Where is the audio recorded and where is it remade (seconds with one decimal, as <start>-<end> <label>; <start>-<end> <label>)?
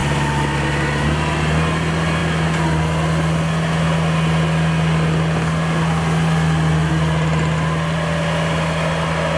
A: 0.0-9.4 recorded